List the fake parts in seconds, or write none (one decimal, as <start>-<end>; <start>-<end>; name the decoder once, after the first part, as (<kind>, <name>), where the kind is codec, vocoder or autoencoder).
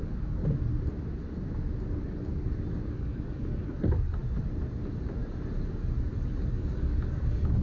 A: 0.0-0.4 (codec, DAC); 2.9-4.2; 6.5-7.6